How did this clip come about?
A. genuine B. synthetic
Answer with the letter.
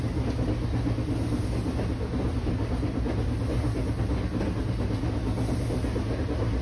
A